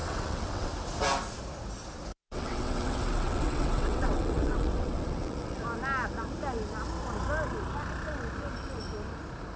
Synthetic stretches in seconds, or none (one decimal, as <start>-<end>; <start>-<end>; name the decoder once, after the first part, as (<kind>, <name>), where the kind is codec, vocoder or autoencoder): 0.0-0.7 (vocoder, WaveNeXt); 2.1-5.6